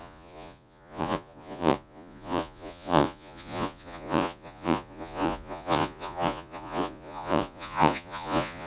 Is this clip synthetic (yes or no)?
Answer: yes